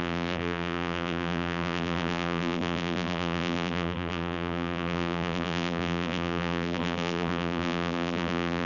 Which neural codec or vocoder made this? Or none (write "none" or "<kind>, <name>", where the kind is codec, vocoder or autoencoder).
vocoder, BigVGAN v2